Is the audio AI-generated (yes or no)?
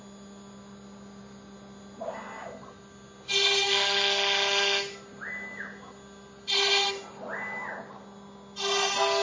no